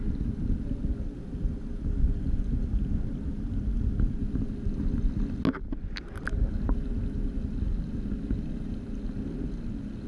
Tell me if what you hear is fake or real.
real